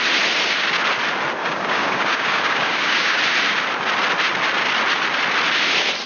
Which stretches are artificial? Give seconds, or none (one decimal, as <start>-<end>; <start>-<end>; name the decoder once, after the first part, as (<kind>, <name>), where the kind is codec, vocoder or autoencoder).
1.4-3.2 (codec, DAC)